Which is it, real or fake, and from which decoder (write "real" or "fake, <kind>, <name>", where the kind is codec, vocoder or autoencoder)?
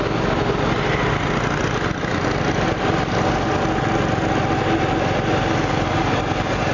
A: real